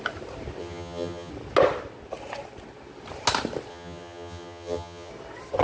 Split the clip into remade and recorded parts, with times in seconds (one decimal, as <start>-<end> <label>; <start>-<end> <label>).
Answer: 0.0-0.6 recorded; 0.6-1.3 remade; 1.3-3.7 recorded; 3.7-5.1 remade; 5.1-5.6 recorded